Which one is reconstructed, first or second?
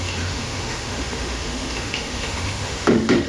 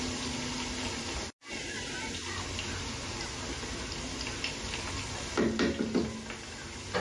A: first